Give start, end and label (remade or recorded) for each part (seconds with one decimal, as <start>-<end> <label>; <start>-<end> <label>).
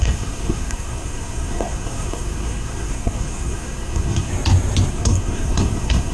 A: 0.0-4.3 remade; 4.3-4.9 recorded; 4.9-6.1 remade